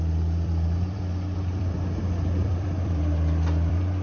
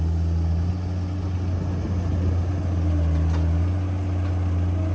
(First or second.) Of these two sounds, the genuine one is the second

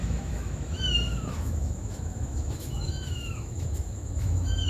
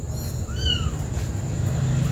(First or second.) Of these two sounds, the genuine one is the second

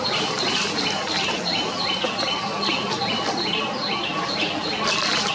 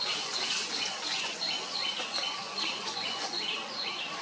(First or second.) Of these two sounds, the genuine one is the first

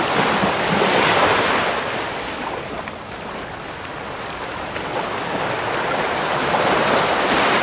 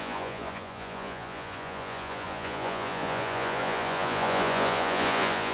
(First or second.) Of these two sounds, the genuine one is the first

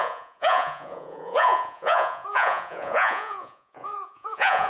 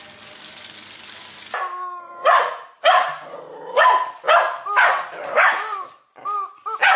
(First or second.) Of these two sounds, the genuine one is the second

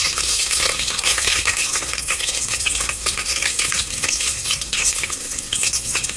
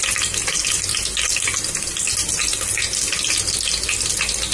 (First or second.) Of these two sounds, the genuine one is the second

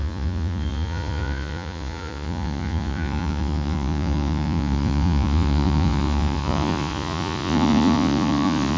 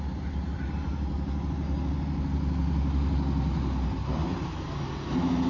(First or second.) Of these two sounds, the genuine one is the second